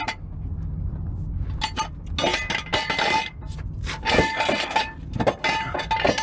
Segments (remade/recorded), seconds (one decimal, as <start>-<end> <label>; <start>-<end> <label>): 0.0-6.2 recorded